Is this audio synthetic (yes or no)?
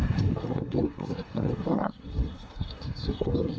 yes